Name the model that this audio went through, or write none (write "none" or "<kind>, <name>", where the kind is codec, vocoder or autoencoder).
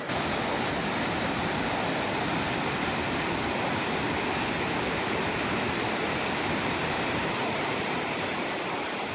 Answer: none